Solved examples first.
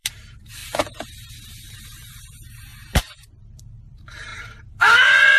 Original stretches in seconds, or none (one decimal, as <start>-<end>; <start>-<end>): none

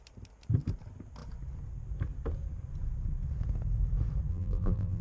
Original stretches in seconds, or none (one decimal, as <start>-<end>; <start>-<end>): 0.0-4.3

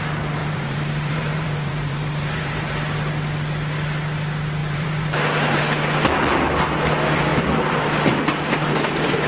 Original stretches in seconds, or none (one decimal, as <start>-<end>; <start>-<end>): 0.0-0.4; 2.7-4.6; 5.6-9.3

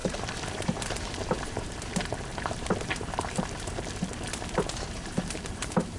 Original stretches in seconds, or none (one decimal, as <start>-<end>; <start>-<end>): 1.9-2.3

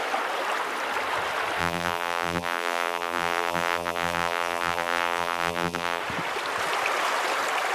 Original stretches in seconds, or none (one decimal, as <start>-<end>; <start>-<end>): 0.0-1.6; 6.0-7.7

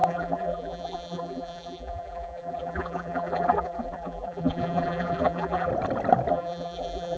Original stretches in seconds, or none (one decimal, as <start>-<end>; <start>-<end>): 5.7-6.3

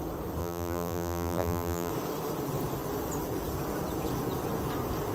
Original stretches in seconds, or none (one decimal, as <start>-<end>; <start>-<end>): 0.0-0.4; 1.9-5.1

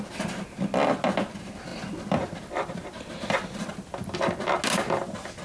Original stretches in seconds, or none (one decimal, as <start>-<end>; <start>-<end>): 0.0-1.7; 4.2-5.4